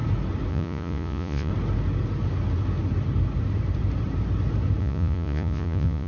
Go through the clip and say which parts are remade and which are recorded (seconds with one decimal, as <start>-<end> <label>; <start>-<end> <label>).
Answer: 0.0-0.5 recorded; 0.5-1.5 remade; 1.5-4.8 recorded; 4.8-6.1 remade